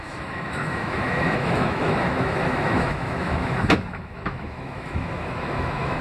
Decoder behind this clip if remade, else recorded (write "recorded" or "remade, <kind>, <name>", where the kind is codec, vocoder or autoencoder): remade, autoencoder, DAC-VAE